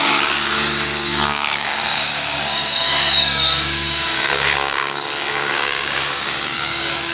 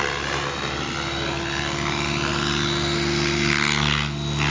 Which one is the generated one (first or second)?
first